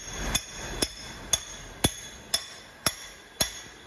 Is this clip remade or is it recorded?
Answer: recorded